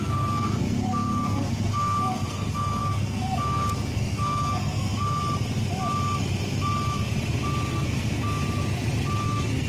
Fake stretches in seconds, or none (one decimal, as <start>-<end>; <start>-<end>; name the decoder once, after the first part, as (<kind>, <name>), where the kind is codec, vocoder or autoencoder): 0.0-5.2 (codec, SNAC); 7.7-8.4; 9.2-9.7